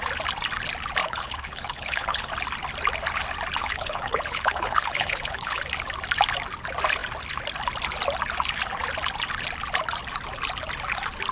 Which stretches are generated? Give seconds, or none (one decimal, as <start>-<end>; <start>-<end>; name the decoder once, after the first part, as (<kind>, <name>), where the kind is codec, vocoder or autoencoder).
1.0-2.3 (codec, HILCodec); 3.6-5.6